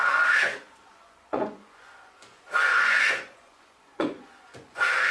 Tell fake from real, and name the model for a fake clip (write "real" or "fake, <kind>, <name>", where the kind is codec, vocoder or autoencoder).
fake, vocoder, Vocos